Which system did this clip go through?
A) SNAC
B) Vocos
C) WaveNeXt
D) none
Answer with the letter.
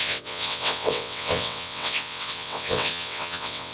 C